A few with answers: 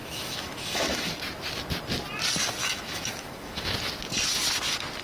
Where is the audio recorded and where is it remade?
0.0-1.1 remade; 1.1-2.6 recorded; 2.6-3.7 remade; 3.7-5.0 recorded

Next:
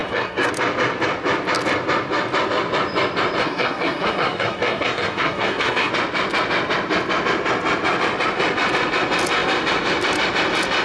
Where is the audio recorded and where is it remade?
0.0-0.5 remade; 0.5-3.4 recorded; 3.4-5.9 remade; 5.9-10.8 recorded

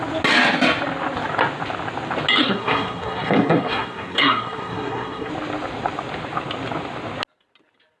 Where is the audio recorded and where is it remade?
0.0-2.4 recorded; 2.4-5.3 remade; 5.3-8.0 recorded

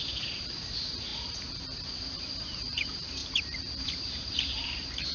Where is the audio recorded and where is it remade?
0.0-3.2 remade; 3.2-3.8 recorded; 3.8-5.1 remade

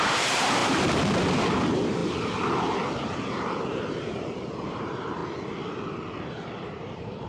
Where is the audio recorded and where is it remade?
0.0-2.0 remade; 2.0-3.0 recorded; 3.0-5.2 remade; 5.2-6.3 recorded; 6.3-7.3 remade

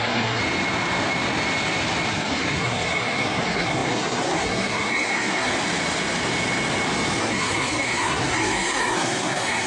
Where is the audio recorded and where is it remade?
0.0-0.4 remade; 0.4-2.1 recorded; 2.1-5.5 remade; 5.5-7.2 recorded; 7.2-9.7 remade